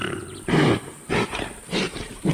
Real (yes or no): no